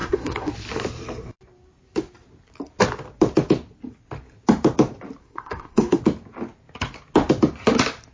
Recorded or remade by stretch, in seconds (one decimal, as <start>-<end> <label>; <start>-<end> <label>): 0.0-0.5 remade; 0.5-5.2 recorded; 5.2-6.0 remade; 6.0-8.1 recorded

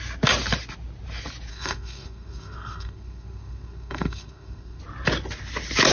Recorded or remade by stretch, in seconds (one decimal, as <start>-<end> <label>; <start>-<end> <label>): 0.0-1.5 recorded; 1.5-4.8 remade; 4.8-5.9 recorded

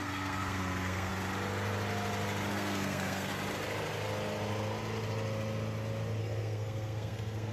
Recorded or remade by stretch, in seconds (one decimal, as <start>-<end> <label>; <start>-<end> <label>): 0.0-1.1 remade; 1.1-2.5 recorded; 2.5-3.3 remade; 3.3-6.2 recorded; 6.2-7.5 remade